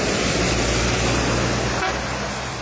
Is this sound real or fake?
real